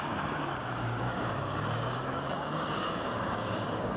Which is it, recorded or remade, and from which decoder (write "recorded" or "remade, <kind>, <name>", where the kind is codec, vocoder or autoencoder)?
remade, codec, DAC